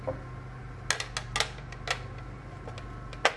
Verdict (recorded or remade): recorded